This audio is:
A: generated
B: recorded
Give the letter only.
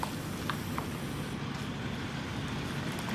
B